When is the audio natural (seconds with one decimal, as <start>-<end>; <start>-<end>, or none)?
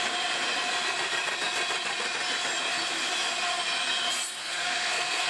0.0-4.4